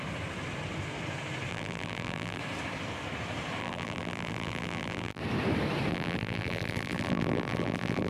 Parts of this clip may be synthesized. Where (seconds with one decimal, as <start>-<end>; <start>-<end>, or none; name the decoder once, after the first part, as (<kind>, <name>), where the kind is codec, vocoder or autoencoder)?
1.5-2.4 (vocoder, BigVGAN v2); 3.6-5.2; 5.9-8.1